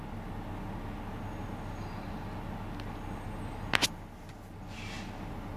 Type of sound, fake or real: real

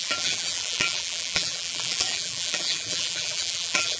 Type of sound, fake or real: fake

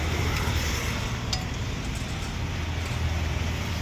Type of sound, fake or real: real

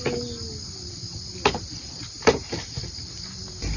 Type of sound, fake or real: real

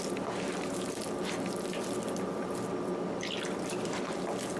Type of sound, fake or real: real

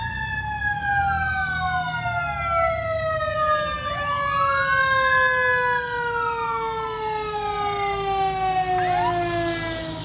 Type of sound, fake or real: real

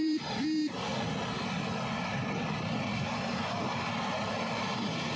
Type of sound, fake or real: fake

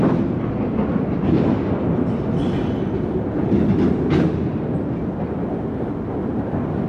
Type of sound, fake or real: real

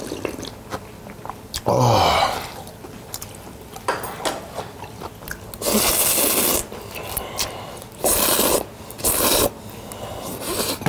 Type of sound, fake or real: real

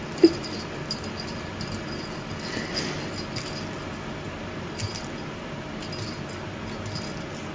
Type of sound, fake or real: real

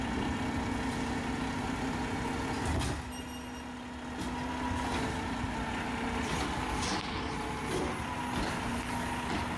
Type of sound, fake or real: real